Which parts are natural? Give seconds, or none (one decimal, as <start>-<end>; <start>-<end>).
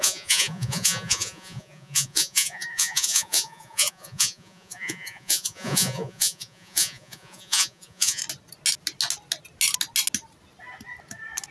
8.2-11.5